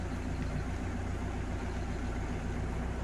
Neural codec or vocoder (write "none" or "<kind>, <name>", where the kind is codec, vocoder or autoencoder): none